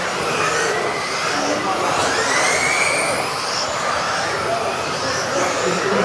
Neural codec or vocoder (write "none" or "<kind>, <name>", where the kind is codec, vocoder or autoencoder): none